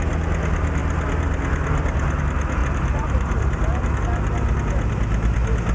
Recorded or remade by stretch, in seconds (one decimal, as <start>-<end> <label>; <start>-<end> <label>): 0.0-2.6 recorded; 2.6-4.0 remade; 4.0-5.7 recorded